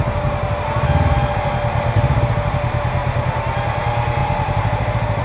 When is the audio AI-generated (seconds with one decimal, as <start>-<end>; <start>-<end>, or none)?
4.2-5.2